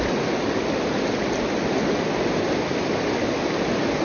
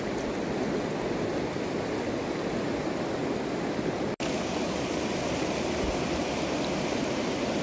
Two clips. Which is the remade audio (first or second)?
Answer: first